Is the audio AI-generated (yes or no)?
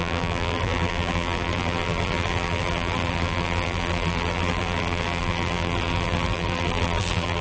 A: yes